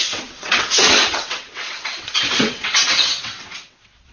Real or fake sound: fake